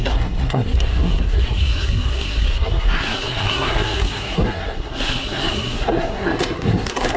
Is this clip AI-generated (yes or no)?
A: yes